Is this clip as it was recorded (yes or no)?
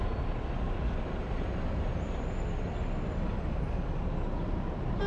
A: yes